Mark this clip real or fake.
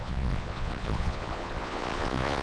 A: fake